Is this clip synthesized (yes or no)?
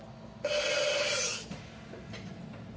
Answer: no